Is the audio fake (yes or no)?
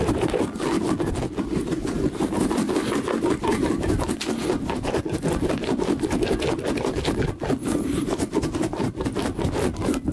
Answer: no